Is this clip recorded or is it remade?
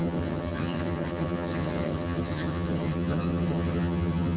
remade